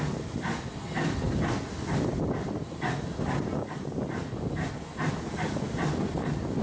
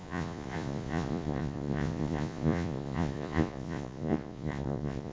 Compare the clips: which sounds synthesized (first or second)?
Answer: second